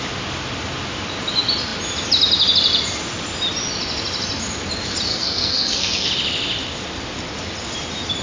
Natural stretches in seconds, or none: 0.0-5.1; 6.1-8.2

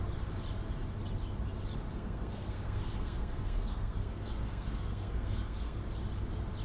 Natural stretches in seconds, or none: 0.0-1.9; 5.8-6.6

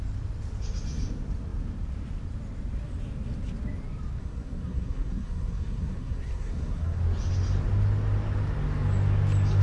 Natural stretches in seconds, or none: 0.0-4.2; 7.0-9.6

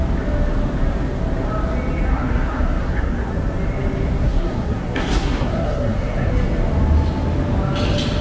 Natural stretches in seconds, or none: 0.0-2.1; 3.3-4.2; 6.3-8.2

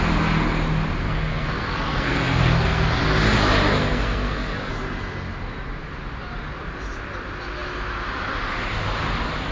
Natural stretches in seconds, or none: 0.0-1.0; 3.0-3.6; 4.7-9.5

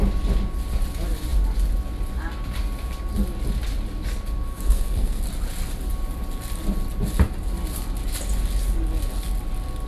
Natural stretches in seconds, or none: 0.0-4.5; 5.2-9.9

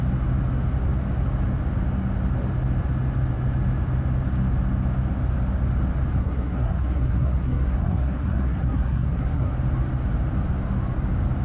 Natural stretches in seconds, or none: 0.0-6.2; 9.5-11.4

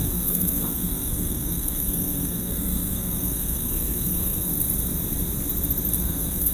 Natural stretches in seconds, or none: 4.5-6.0